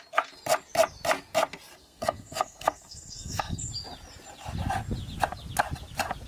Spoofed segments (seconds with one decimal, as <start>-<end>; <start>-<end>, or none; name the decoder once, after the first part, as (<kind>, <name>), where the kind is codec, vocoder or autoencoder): 1.8-3.7 (codec, SNAC)